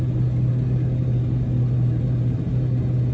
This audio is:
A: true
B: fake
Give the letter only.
A